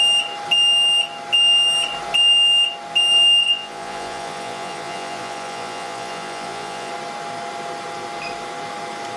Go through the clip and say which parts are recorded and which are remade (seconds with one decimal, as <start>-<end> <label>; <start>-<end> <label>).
0.0-3.4 recorded; 3.4-6.9 remade; 6.9-9.2 recorded